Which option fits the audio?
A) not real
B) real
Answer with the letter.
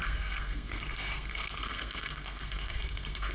A